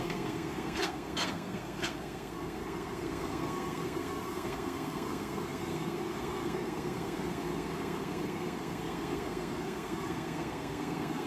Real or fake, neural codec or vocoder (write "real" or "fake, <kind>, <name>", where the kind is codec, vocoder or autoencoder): fake, codec, SNAC